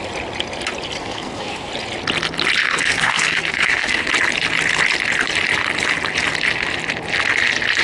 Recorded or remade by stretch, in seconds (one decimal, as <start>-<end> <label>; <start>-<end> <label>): 0.0-1.0 recorded; 1.0-1.7 remade; 1.7-2.6 recorded; 2.6-4.1 remade; 4.1-7.8 recorded